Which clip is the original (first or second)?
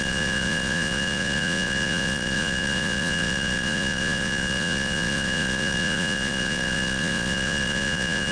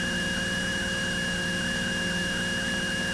second